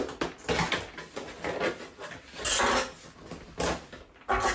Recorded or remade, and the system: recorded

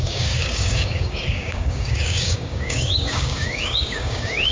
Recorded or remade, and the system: remade, codec, DAC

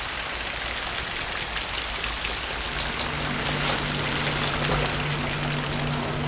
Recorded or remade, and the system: recorded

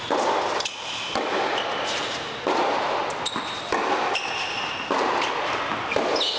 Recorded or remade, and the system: recorded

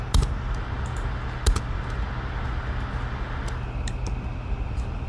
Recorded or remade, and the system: recorded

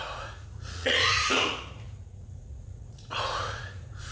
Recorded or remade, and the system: remade, vocoder, Vocos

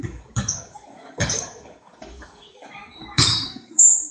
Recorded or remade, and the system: remade, codec, DAC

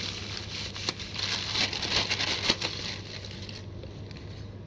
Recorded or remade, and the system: recorded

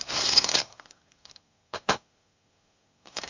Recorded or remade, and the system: remade, codec, SNAC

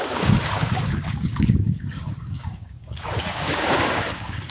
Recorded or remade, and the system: remade, codec, DAC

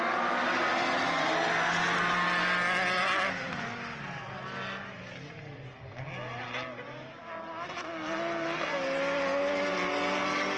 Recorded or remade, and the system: recorded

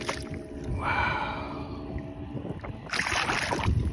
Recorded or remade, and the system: recorded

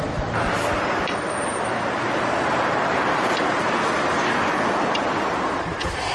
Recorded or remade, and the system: remade, vocoder, BigVGAN v2